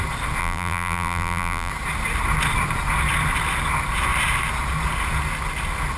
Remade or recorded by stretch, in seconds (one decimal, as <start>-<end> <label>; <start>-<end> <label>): 0.0-0.4 recorded; 0.4-1.7 remade; 1.7-6.0 recorded